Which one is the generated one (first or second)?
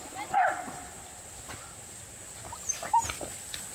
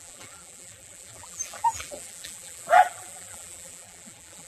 second